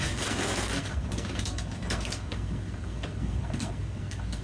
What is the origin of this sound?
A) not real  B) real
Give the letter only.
A